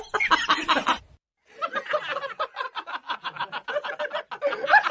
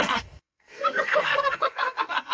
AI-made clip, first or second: second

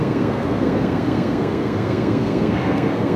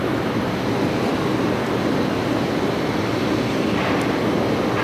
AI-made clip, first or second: first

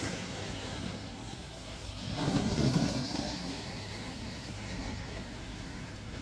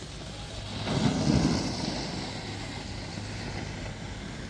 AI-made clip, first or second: first